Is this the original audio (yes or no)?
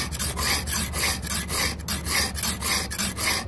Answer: yes